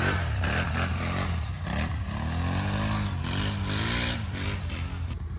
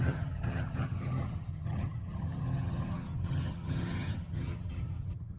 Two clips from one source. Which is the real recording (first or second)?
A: first